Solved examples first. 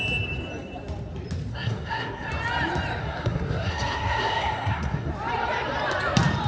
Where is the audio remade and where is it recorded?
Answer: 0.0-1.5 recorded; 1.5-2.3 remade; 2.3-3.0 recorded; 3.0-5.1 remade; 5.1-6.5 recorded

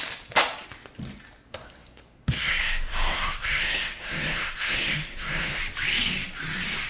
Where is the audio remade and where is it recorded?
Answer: 0.0-1.5 recorded; 1.5-5.6 remade; 5.6-6.9 recorded

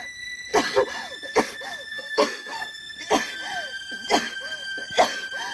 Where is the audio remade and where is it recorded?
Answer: 0.0-1.9 recorded; 1.9-2.8 remade; 2.8-5.5 recorded

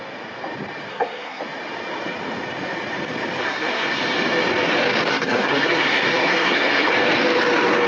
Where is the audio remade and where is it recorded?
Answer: 0.0-0.9 recorded; 0.9-1.4 remade; 1.4-3.4 recorded; 3.4-4.0 remade; 4.0-5.1 recorded; 5.1-6.9 remade; 6.9-7.9 recorded

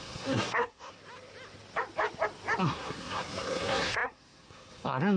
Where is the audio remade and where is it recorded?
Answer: 0.0-1.0 remade; 1.0-2.6 recorded; 2.6-5.2 remade

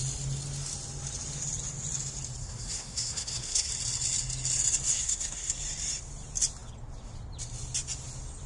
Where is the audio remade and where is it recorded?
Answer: 0.0-2.4 recorded; 2.4-3.7 remade; 3.7-4.9 recorded; 4.9-5.5 remade; 5.5-8.5 recorded

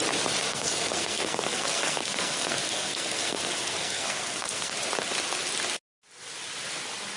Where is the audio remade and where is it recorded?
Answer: 0.0-0.5 recorded; 0.5-4.7 remade; 4.7-7.2 recorded